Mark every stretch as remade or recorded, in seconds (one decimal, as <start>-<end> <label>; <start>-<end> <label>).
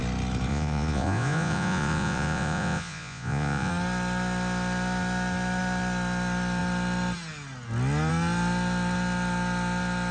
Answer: 0.0-0.5 recorded; 0.5-3.7 remade; 3.7-10.1 recorded